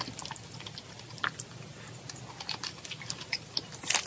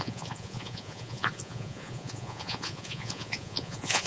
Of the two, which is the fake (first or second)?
second